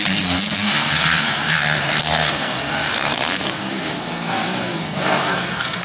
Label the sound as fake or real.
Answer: fake